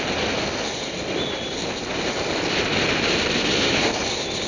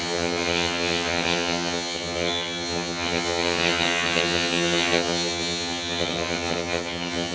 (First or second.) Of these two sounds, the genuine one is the first